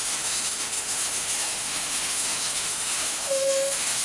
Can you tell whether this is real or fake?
fake